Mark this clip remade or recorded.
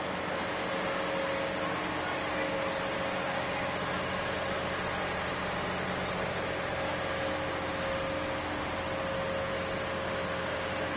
recorded